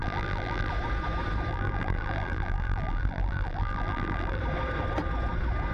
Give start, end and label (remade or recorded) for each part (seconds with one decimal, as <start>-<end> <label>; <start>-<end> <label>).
0.0-0.7 remade; 0.7-1.5 recorded; 1.5-4.4 remade; 4.4-5.7 recorded